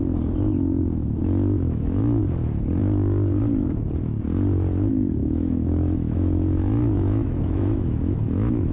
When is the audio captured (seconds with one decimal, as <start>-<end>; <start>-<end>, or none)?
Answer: 0.0-1.2; 2.2-5.2